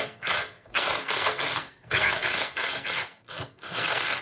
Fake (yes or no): yes